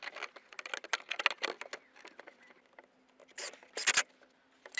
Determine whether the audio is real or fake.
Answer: real